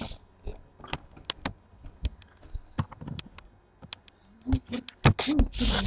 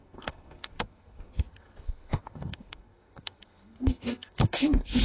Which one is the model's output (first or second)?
second